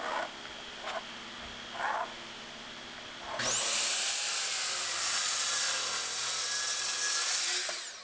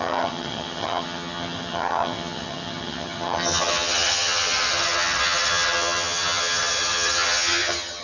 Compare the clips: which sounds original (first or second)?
first